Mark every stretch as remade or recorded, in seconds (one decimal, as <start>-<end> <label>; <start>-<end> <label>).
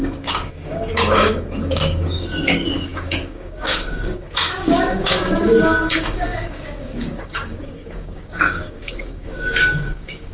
0.0-10.3 remade